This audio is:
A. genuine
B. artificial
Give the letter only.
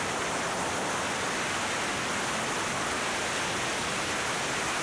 A